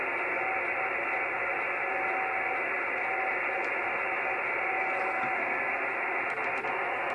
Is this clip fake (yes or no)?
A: no